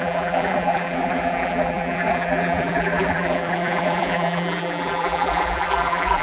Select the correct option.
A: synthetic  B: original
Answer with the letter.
A